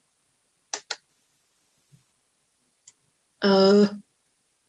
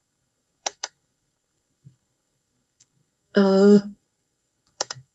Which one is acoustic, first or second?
first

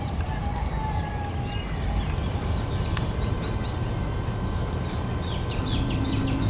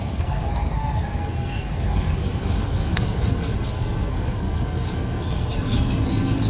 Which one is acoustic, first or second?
first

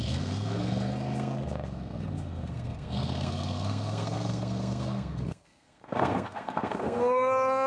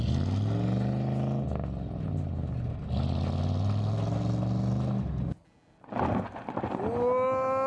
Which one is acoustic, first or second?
second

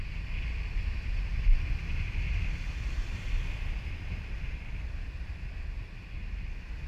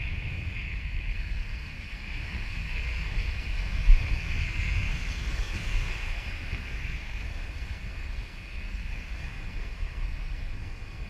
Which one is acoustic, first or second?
first